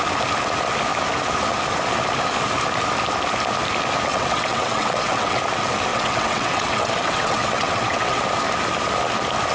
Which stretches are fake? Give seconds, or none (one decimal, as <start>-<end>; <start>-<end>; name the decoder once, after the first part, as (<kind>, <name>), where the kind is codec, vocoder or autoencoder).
4.1-5.4 (vocoder, WaveNeXt); 5.9-8.2